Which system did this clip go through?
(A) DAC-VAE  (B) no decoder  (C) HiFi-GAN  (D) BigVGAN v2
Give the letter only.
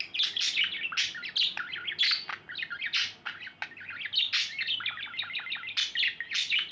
B